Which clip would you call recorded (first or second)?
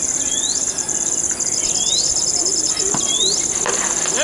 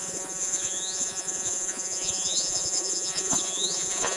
first